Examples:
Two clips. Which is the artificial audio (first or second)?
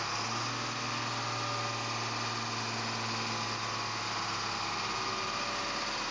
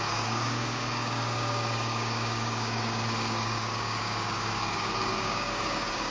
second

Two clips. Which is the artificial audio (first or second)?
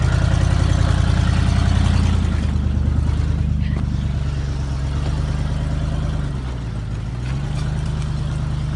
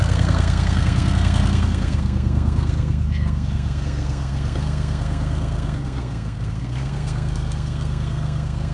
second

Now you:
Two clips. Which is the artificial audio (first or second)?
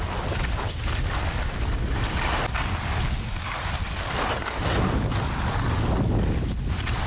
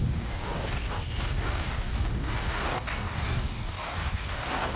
second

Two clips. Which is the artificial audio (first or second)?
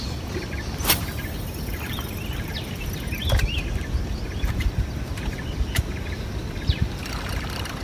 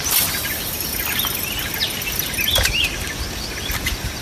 first